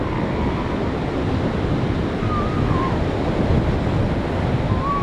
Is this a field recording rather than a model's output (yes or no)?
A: yes